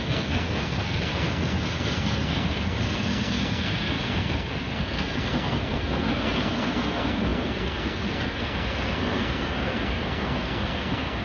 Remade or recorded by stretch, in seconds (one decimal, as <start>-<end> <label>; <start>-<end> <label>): 0.0-11.2 remade